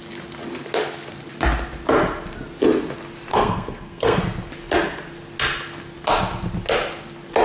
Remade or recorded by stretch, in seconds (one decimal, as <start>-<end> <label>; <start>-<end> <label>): 0.0-3.3 recorded; 3.3-4.2 remade; 4.2-7.4 recorded